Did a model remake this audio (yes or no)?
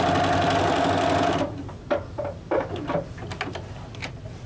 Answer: no